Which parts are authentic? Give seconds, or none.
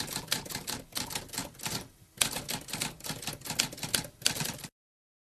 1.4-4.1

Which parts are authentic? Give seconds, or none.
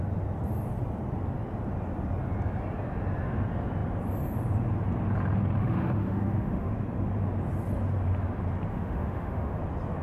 0.0-5.6; 6.7-8.7; 9.6-10.0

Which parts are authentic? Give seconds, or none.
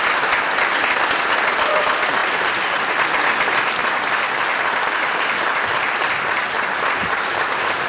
0.0-2.2; 2.9-3.8; 7.4-7.9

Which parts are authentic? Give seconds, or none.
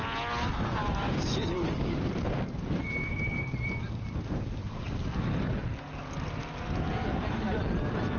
0.0-0.8; 4.9-7.1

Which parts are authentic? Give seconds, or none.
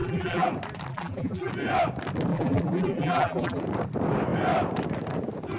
0.5-0.9; 1.5-2.3; 3.6-5.6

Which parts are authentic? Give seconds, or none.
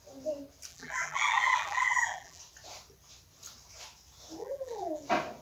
0.0-0.7; 2.4-4.4; 5.0-5.4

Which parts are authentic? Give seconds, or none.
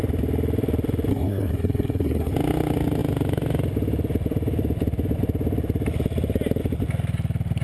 0.0-1.1; 2.3-7.6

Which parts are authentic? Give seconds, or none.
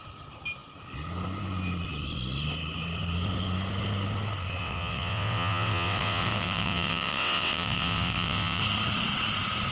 0.0-4.6; 8.6-9.7